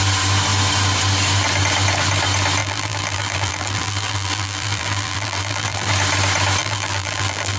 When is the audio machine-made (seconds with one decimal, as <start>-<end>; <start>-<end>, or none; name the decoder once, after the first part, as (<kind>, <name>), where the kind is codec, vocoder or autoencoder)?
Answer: 2.6-5.9 (vocoder, BigVGAN v2); 6.6-7.6